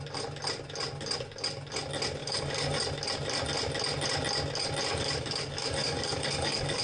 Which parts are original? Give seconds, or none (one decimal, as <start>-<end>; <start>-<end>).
0.0-2.2; 2.8-4.9